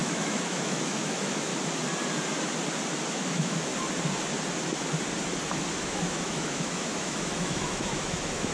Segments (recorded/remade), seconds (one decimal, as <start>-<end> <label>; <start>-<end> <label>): 0.0-1.5 remade; 1.5-3.1 recorded; 3.1-3.7 remade; 3.7-5.8 recorded; 5.8-8.5 remade